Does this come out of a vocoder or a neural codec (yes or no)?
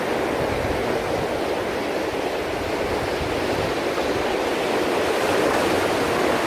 no